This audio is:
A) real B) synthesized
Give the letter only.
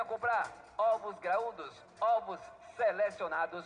A